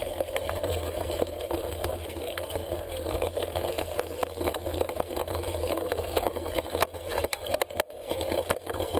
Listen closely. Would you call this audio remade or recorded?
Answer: remade